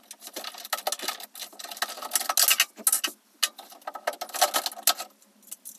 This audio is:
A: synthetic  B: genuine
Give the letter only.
B